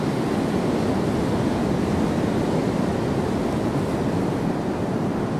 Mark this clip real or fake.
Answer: real